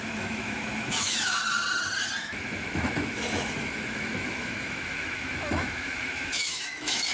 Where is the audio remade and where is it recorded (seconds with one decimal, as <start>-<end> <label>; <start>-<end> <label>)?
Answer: 0.0-1.4 remade; 1.4-2.2 recorded; 2.2-7.1 remade

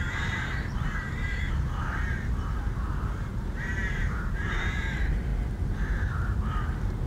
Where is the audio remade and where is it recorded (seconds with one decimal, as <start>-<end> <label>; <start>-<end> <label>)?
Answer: 0.0-5.3 remade; 5.3-5.9 recorded; 5.9-7.1 remade

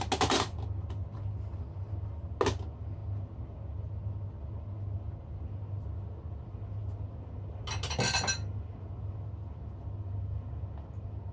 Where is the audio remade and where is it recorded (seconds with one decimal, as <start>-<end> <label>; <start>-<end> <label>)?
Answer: 0.0-11.3 recorded

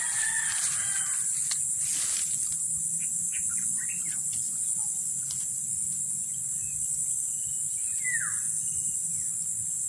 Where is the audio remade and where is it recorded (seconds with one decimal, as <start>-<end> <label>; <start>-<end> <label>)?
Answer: 0.0-9.9 recorded

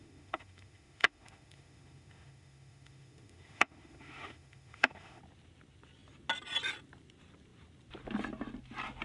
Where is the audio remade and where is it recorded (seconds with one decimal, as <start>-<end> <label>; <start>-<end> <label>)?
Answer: 0.0-5.2 remade; 5.2-9.0 recorded

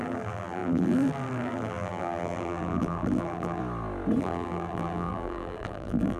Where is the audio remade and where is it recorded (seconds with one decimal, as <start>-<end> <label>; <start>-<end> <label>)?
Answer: 0.0-3.6 remade; 3.6-4.2 recorded; 4.2-6.2 remade